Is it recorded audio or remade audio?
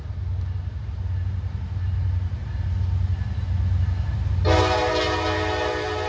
recorded